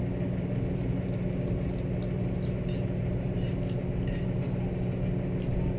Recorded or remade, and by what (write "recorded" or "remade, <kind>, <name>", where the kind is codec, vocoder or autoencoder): recorded